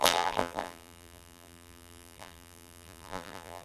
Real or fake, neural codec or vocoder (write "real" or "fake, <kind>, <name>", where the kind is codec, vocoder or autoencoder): fake, vocoder, BigVGAN v2